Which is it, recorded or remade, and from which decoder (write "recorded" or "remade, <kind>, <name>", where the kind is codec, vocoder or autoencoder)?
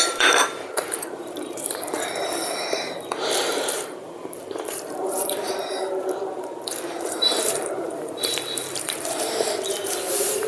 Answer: remade, vocoder, BigVGAN v2